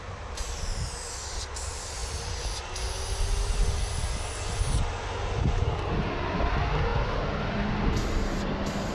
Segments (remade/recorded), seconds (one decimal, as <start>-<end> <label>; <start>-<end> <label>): 0.0-8.9 recorded